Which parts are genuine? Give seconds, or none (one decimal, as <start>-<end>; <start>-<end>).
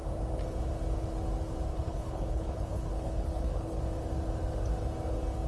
0.0-1.7; 3.8-5.5